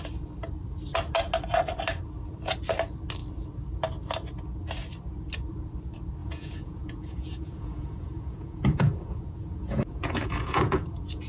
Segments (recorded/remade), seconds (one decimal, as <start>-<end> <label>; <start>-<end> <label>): 0.0-6.2 recorded; 6.2-11.3 remade